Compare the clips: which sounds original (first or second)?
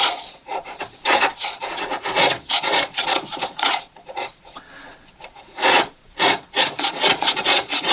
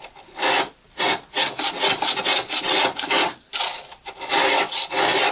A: second